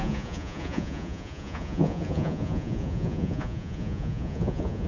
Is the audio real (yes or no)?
no